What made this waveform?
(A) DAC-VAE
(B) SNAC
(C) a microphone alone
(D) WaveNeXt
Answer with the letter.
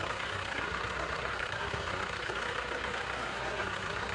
B